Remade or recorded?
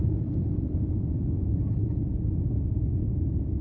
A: remade